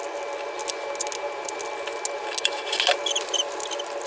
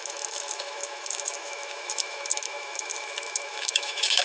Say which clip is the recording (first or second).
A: first